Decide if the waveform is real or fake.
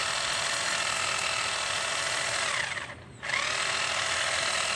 real